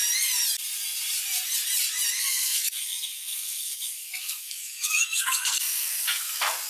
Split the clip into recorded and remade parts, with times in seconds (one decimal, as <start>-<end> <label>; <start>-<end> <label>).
0.0-2.2 recorded; 2.2-6.7 remade